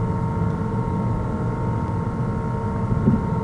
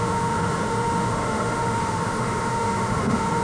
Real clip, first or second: first